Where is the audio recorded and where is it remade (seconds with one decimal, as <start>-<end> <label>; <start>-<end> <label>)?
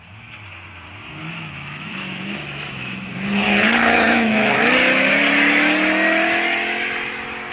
0.0-1.2 recorded; 1.2-5.1 remade; 5.1-7.5 recorded